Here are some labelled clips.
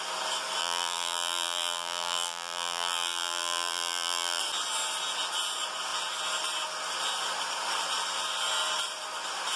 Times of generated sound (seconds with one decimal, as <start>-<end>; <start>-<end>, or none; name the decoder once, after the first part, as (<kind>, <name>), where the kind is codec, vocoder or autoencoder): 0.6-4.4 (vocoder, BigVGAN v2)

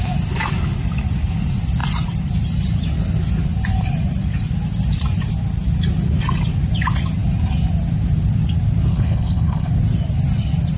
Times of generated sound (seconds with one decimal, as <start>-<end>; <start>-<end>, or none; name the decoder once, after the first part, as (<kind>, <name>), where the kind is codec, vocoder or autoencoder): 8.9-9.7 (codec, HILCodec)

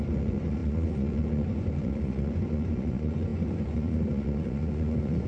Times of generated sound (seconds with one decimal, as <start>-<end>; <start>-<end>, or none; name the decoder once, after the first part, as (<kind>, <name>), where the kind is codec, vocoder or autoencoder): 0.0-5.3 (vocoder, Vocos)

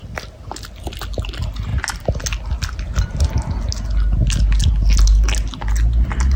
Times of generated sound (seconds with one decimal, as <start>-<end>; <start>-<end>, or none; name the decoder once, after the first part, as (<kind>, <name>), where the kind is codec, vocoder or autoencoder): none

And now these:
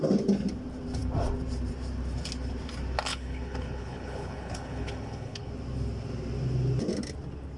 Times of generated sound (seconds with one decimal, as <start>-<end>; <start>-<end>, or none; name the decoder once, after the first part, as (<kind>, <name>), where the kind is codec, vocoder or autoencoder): 3.1-5.5 (codec, HILCodec)